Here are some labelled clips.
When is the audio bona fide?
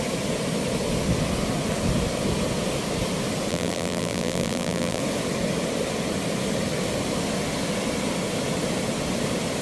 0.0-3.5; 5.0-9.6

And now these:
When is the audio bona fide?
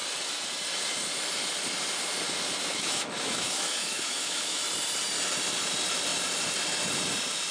0.0-2.7; 4.6-7.5